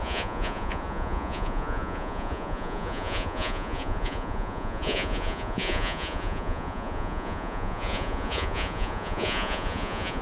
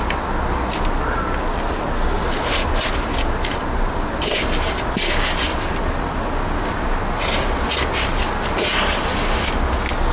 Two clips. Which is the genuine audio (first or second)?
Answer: second